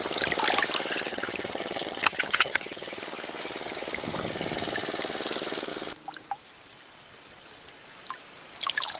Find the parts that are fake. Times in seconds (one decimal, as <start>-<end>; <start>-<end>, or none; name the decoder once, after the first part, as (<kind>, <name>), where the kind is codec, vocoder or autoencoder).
1.1-3.0 (vocoder, HiFi-GAN)